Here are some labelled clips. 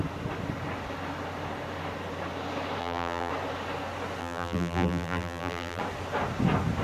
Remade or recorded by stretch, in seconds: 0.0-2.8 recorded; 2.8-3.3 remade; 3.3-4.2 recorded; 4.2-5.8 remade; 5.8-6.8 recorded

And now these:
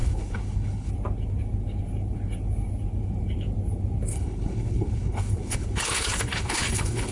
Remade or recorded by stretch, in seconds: 0.0-0.9 remade; 0.9-4.1 recorded; 4.1-7.1 remade

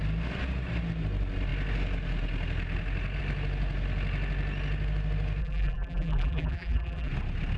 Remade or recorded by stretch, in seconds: 0.0-5.4 recorded; 5.4-7.1 remade; 7.1-7.6 recorded